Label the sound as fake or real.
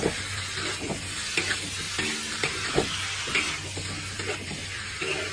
real